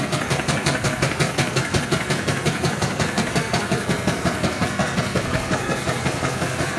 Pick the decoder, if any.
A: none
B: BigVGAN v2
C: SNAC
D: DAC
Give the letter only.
C